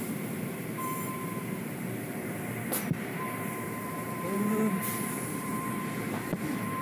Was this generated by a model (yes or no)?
yes